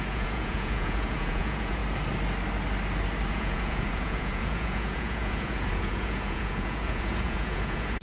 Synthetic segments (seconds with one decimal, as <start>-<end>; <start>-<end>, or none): 0.0-1.8; 3.3-8.0